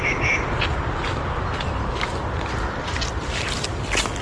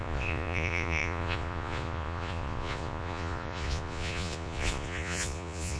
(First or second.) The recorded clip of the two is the first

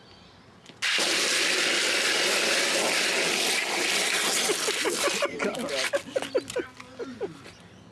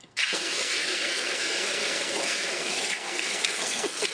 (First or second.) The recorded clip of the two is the first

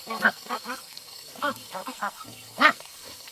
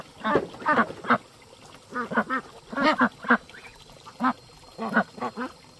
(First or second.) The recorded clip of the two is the second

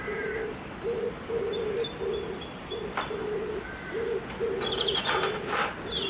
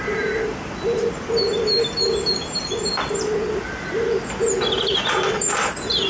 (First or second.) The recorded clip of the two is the second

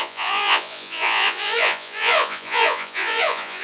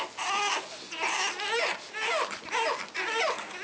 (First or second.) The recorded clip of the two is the second